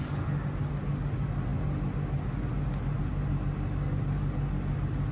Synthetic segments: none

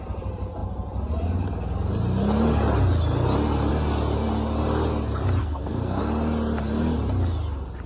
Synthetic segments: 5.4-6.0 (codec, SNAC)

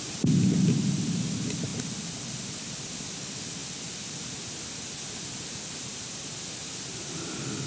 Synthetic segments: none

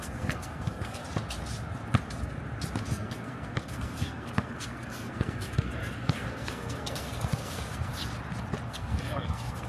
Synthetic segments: 0.0-1.0 (codec, SNAC); 2.8-7.9; 8.7-9.7

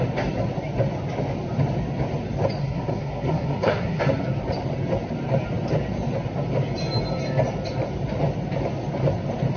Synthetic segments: 2.6-4.0 (codec, SNAC)